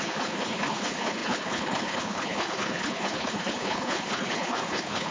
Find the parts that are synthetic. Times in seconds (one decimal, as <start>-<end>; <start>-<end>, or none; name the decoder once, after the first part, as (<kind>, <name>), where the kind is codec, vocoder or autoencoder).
0.0-5.1 (codec, HILCodec)